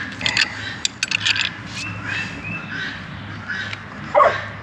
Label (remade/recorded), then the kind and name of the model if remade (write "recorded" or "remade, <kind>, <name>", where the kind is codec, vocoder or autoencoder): recorded